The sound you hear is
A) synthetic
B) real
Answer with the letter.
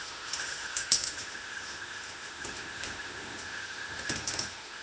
A